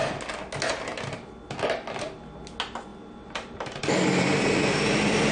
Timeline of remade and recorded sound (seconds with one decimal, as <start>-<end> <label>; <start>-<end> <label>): 0.0-2.9 recorded; 2.9-5.3 remade